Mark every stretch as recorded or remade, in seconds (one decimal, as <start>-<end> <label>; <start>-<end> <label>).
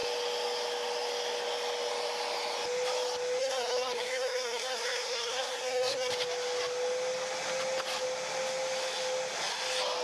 0.0-3.4 recorded; 3.4-6.1 remade; 6.1-10.0 recorded